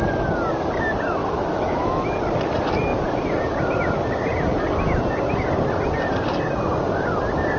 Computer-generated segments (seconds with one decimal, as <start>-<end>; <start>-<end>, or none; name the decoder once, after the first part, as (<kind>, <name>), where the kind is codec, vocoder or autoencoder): 1.2-2.0 (autoencoder, DAC-VAE)